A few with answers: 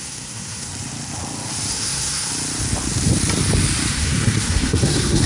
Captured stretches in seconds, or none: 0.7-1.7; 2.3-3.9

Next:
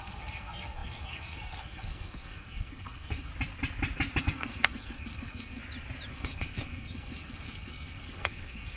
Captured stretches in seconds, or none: 3.3-4.2; 5.6-6.1

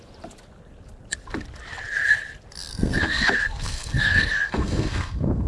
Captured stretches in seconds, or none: 0.0-2.7

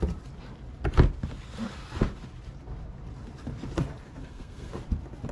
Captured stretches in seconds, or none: 0.0-4.2; 4.7-5.3

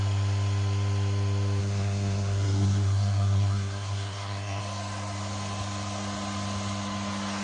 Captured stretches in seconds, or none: 0.0-1.6; 4.6-7.4

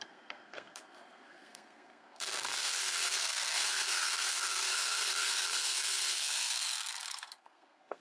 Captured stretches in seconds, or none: none